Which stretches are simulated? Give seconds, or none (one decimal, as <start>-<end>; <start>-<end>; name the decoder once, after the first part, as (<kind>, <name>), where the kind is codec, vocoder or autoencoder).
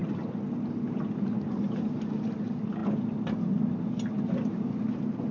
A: none